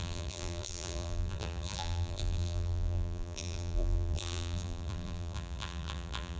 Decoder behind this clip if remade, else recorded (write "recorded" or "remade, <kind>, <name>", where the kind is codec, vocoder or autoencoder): remade, vocoder, BigVGAN v2